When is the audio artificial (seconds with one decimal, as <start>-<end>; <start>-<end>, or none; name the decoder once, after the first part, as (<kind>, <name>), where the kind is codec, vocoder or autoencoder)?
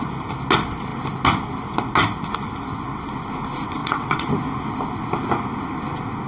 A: 3.8-4.3 (vocoder, WaveNeXt)